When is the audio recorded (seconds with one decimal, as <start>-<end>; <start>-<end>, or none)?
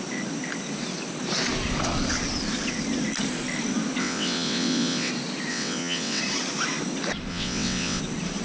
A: 0.0-4.0; 5.1-5.5; 6.2-7.3; 8.0-8.4